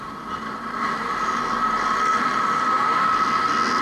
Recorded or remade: recorded